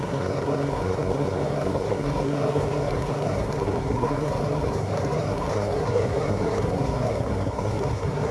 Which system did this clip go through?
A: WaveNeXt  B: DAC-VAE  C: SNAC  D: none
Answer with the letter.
C